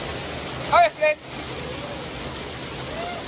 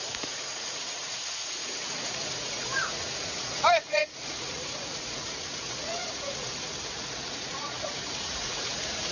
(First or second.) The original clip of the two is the first